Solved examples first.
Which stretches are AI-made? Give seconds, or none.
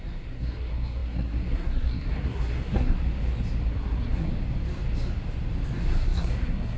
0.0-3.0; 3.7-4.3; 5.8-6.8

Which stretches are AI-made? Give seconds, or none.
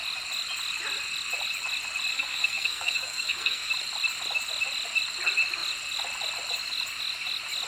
2.1-3.7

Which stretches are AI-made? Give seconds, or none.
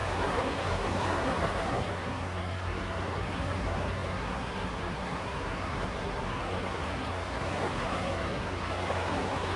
0.0-9.6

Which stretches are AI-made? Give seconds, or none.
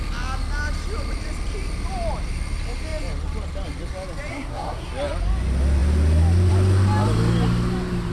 4.3-4.9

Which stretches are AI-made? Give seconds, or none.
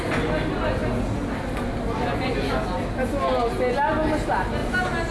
none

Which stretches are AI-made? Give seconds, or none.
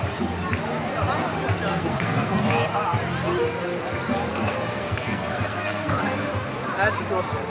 1.7-2.4; 4.3-6.0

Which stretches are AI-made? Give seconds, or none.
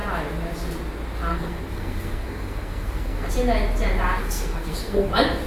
1.3-3.3; 4.2-5.1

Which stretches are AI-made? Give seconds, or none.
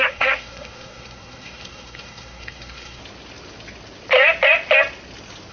0.0-3.0